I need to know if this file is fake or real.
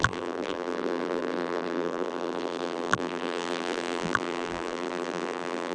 fake